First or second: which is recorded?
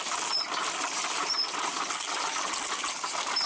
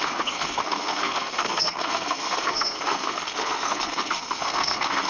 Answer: first